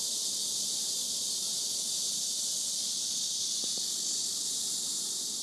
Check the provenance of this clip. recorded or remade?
recorded